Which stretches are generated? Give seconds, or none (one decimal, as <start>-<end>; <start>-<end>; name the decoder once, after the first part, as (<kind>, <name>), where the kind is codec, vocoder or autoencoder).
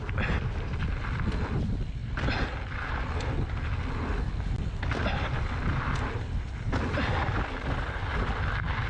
none